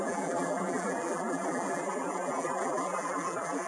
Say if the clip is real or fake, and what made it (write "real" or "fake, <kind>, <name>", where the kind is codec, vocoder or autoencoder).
fake, vocoder, BigVGAN v2